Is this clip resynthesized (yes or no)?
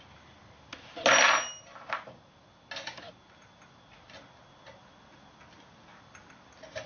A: no